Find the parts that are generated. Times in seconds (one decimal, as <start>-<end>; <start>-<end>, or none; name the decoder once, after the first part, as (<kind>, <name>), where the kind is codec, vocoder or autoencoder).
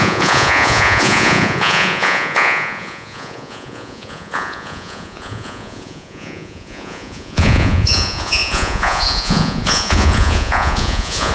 0.0-11.3 (vocoder, Vocos)